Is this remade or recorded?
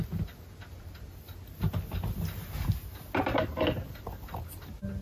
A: recorded